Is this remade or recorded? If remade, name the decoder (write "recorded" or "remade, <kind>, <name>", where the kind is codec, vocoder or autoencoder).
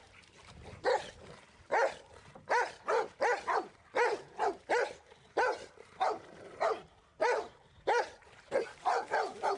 remade, vocoder, BigVGAN v2